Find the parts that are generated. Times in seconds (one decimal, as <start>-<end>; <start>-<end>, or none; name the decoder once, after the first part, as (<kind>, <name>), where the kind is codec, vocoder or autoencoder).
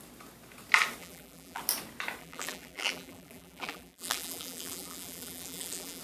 1.0-1.6 (vocoder, BigVGAN v2); 2.2-6.0